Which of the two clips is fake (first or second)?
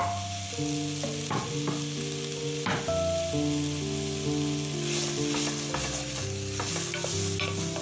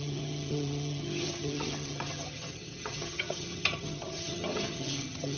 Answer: second